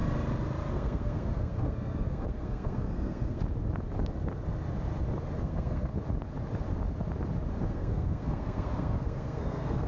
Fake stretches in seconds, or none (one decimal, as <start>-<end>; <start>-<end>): 0.7-3.4; 5.4-5.9; 7.7-9.9